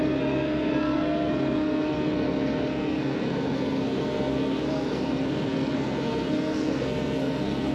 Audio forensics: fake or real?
fake